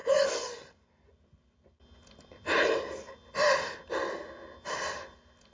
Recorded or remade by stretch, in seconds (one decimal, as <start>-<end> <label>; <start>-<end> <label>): 0.0-5.5 recorded

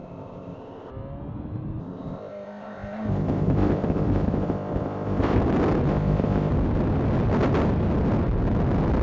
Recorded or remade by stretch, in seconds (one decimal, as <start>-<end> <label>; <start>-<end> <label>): 0.0-0.9 remade; 0.9-1.8 recorded; 1.8-5.4 remade; 5.4-5.9 recorded; 5.9-6.5 remade; 6.5-9.0 recorded

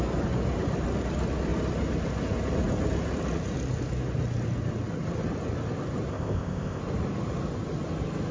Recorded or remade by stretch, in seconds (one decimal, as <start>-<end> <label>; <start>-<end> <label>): 0.0-6.1 recorded; 6.1-6.8 remade; 6.8-8.3 recorded

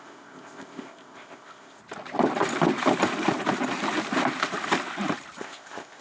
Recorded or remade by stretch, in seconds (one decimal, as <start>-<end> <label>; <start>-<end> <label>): 0.0-1.8 remade; 1.8-5.4 recorded; 5.4-6.0 remade

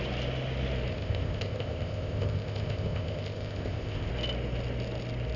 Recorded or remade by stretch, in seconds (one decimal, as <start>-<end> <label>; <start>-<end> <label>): 0.0-0.9 recorded; 0.9-4.1 remade; 4.1-5.4 recorded

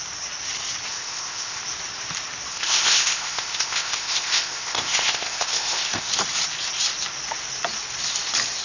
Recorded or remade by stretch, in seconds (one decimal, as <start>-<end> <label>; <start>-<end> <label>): 0.0-0.9 recorded; 0.9-1.6 remade; 1.6-2.5 recorded; 2.5-6.1 remade; 6.1-8.6 recorded

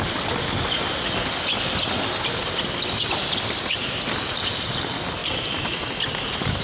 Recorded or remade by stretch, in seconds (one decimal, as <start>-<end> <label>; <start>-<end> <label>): 0.0-6.6 recorded